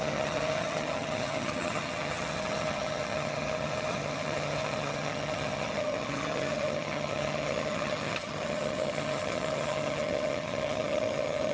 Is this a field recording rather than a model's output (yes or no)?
no